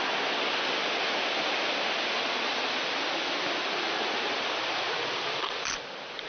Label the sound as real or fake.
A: real